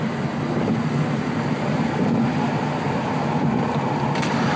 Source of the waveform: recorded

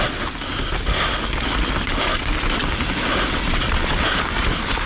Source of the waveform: recorded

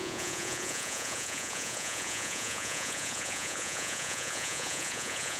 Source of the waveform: remade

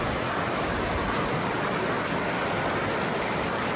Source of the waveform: recorded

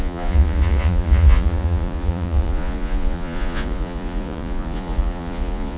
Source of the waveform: remade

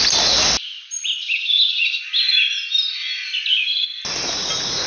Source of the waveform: recorded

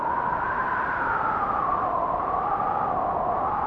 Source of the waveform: recorded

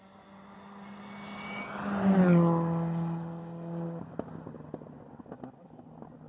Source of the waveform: recorded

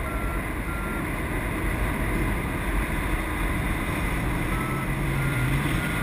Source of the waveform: recorded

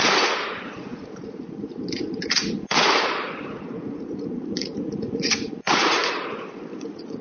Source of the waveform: remade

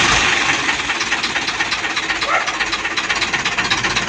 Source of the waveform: recorded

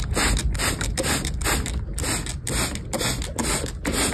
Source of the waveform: recorded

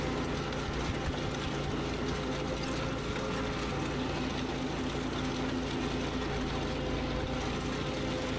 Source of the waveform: recorded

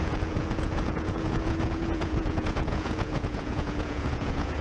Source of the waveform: remade